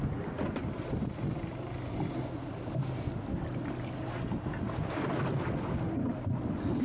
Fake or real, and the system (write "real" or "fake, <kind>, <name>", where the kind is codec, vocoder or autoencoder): real